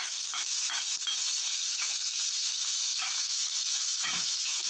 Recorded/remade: remade